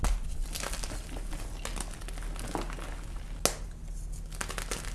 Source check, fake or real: real